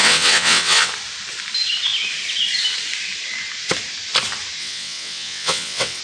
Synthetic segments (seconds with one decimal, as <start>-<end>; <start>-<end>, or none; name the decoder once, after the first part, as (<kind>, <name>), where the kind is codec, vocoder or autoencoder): 0.0-0.9 (vocoder, WaveNeXt); 4.6-6.0